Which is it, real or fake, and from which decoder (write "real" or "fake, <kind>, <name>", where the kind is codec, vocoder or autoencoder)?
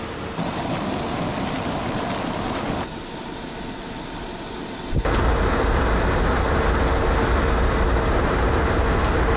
real